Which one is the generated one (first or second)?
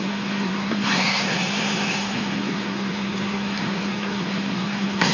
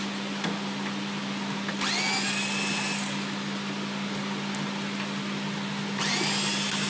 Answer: first